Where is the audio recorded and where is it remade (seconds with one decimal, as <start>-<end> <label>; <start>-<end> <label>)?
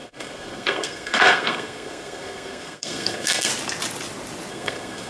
0.0-3.5 remade; 3.5-4.5 recorded; 4.5-5.1 remade